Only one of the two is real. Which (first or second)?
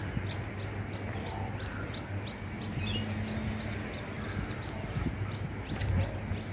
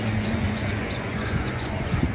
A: first